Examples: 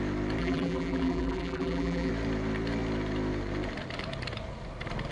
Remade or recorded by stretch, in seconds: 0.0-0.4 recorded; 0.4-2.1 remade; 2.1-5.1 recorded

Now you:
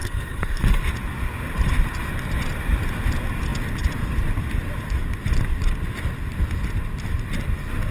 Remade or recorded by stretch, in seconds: 0.0-0.8 remade; 0.8-7.9 recorded

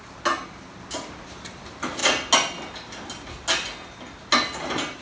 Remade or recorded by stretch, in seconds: 0.0-5.0 recorded

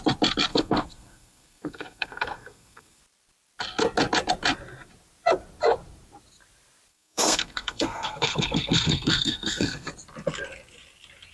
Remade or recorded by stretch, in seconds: 0.0-0.5 recorded; 0.5-3.0 remade; 3.0-6.9 recorded; 6.9-9.9 remade; 9.9-11.3 recorded

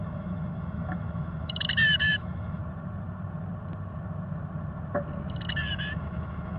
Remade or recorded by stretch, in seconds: 0.0-2.6 remade; 2.6-5.5 recorded; 5.5-6.6 remade

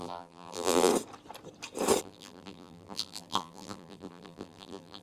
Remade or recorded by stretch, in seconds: 0.0-0.9 remade; 0.9-2.0 recorded; 2.0-5.0 remade

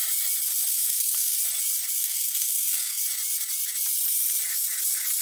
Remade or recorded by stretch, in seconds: 0.0-0.7 recorded; 0.7-1.4 remade; 1.4-2.0 recorded; 2.0-3.0 remade; 3.0-5.2 recorded